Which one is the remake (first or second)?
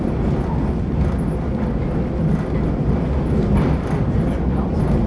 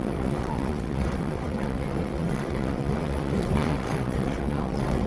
second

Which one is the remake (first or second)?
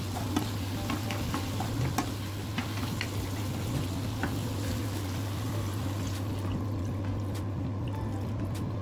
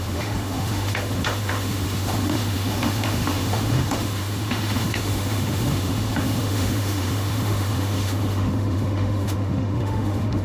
second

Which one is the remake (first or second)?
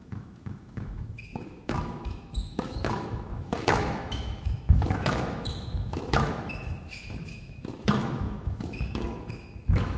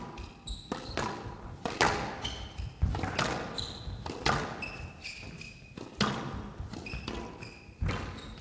first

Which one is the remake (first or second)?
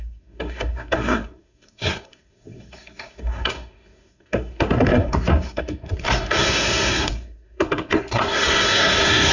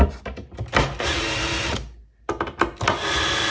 first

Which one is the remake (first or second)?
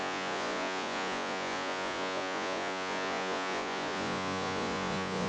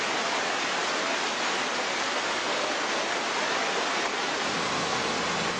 first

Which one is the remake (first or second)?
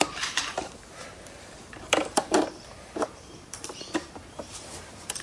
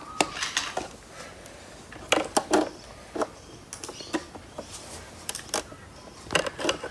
first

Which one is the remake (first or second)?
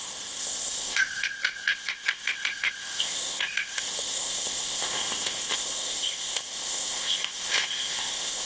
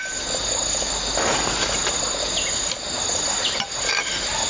first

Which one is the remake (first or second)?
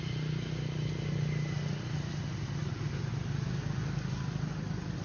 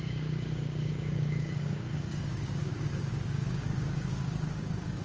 second